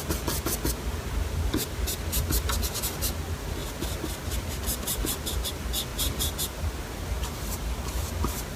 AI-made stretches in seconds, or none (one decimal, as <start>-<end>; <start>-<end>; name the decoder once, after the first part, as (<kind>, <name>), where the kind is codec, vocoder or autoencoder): none